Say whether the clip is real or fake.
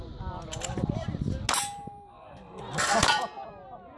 real